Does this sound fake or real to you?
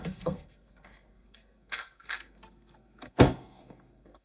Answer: fake